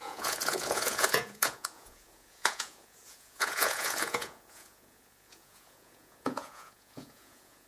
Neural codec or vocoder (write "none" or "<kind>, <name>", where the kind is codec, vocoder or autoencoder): vocoder, Vocos